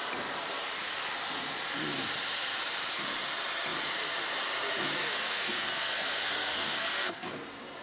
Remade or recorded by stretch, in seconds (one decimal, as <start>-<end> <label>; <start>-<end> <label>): 0.0-5.0 recorded; 5.0-7.3 remade; 7.3-7.8 recorded